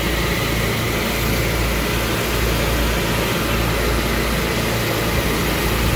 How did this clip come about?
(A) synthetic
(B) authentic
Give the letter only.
B